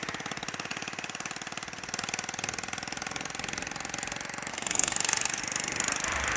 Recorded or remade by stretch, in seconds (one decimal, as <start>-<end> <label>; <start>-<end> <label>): 0.0-4.5 recorded; 4.5-5.4 remade; 5.4-6.4 recorded